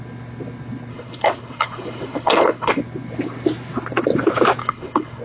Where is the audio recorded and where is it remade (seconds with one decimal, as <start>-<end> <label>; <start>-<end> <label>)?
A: 0.0-0.9 recorded; 0.9-2.8 remade; 2.8-4.6 recorded; 4.6-5.2 remade